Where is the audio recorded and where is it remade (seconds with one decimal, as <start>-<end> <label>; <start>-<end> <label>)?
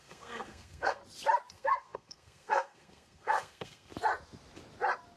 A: 0.0-1.0 remade; 1.0-1.5 recorded; 1.5-3.9 remade; 3.9-5.2 recorded